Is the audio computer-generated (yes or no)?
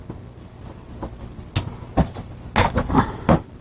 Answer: no